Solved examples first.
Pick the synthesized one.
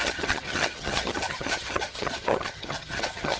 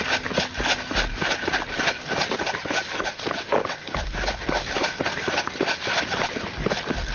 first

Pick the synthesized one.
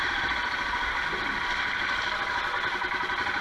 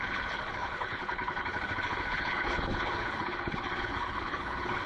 second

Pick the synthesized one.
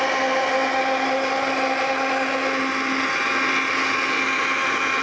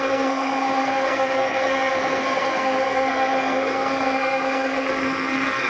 second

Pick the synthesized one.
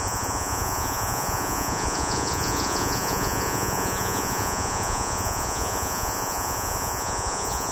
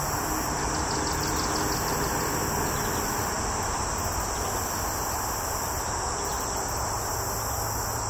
first